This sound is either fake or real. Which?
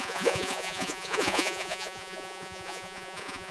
fake